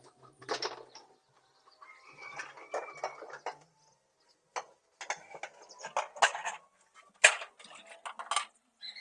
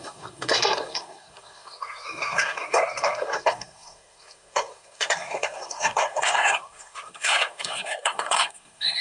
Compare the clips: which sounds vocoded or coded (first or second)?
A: second